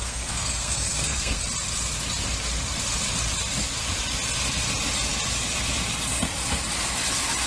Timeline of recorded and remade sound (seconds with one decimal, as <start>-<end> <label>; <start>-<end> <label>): 0.0-1.4 remade; 1.4-7.5 recorded